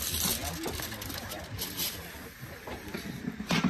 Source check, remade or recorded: recorded